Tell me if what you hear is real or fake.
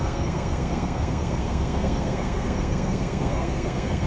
fake